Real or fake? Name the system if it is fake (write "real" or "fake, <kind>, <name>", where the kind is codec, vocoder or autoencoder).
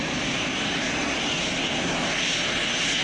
real